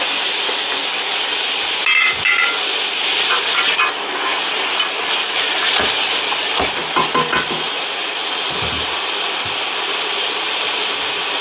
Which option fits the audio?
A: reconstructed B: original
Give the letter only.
B